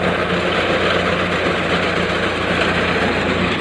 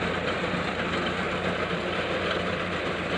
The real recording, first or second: first